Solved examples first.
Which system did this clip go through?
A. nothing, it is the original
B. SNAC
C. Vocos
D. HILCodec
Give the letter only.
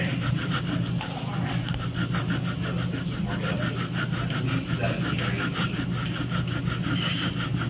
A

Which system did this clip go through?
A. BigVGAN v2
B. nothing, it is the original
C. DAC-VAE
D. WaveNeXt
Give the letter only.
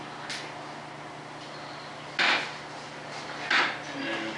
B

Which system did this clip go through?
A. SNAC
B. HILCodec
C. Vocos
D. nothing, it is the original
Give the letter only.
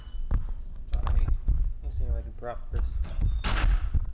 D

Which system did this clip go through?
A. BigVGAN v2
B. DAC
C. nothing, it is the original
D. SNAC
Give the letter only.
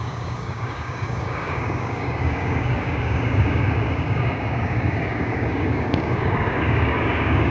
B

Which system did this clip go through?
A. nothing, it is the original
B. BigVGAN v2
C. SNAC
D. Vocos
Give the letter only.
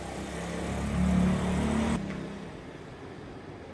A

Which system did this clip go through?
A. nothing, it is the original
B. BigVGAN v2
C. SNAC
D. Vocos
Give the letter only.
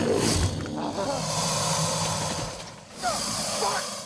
A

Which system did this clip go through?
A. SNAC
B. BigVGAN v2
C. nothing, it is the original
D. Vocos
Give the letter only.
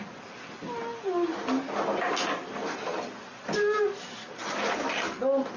C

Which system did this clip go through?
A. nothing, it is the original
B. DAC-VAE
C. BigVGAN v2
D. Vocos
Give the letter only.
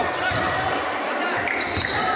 A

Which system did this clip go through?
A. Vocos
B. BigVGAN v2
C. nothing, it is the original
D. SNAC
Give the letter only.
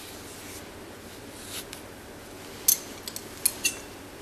C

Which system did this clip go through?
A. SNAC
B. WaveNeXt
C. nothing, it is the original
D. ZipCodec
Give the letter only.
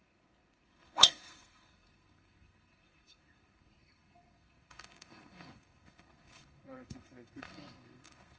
A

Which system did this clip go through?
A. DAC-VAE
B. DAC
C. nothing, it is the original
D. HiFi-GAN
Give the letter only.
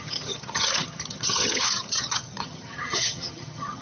D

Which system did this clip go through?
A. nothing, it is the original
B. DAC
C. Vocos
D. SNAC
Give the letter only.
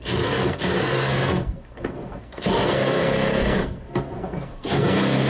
D